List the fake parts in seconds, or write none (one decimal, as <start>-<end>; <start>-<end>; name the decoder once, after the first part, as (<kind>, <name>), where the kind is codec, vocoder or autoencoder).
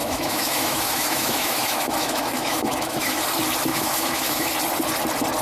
0.0-3.2 (autoencoder, DAC-VAE); 3.7-4.5